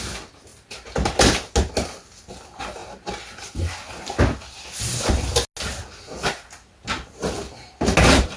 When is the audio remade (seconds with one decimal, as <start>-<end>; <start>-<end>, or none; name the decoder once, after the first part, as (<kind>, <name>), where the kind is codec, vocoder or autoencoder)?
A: none